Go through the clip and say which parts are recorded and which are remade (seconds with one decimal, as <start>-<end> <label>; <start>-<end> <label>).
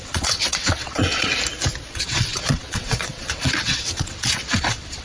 0.0-1.3 remade; 1.3-1.9 recorded; 1.9-5.0 remade